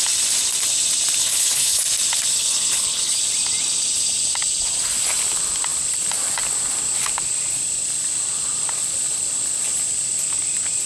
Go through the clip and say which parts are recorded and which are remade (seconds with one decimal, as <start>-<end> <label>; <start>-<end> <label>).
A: 0.0-1.2 recorded; 1.2-1.8 remade; 1.8-2.3 recorded; 2.3-3.2 remade; 3.2-10.9 recorded